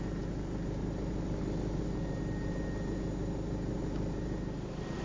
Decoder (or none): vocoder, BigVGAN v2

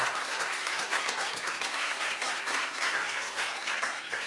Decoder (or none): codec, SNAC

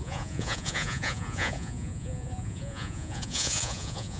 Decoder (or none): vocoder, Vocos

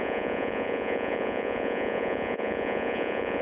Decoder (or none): vocoder, Vocos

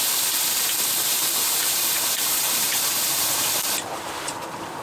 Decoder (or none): vocoder, BigVGAN v2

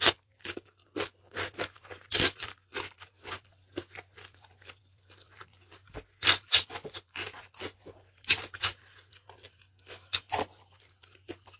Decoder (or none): none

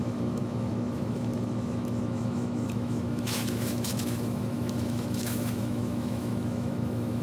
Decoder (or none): autoencoder, DAC-VAE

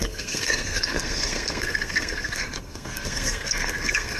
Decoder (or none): codec, SNAC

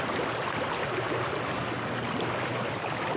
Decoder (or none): none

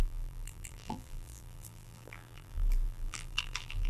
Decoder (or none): vocoder, BigVGAN v2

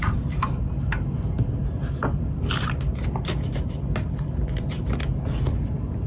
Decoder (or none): none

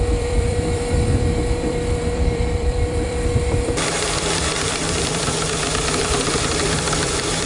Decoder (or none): vocoder, BigVGAN v2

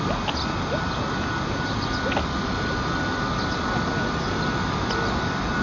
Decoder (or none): none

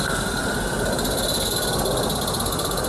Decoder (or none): none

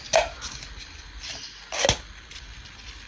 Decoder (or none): none